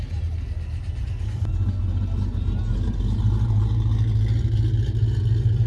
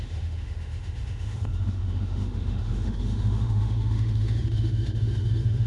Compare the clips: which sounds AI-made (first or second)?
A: second